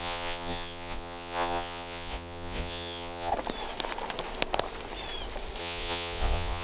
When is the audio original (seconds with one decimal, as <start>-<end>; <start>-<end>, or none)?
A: 3.3-5.6